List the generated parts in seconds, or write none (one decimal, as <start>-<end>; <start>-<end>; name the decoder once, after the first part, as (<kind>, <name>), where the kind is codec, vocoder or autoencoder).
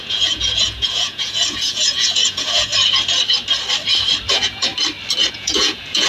0.0-2.7 (vocoder, Vocos); 4.3-4.7; 5.3-6.1